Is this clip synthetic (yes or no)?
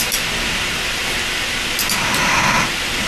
no